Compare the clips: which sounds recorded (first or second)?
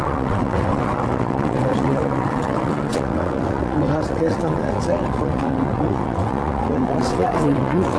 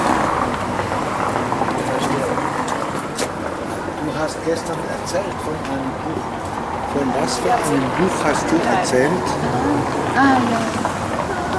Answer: second